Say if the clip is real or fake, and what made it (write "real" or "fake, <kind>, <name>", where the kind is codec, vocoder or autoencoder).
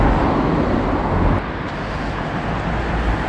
real